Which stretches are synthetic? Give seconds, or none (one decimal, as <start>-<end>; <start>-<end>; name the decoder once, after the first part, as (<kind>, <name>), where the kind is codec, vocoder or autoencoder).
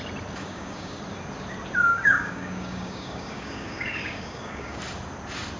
0.4-1.0 (codec, DAC); 1.9-4.8